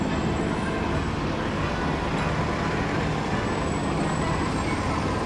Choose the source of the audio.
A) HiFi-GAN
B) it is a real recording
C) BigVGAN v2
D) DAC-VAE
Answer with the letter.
B